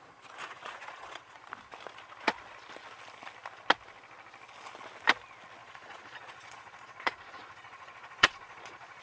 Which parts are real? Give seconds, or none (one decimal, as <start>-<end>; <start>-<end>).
0.0-0.4; 1.4-5.6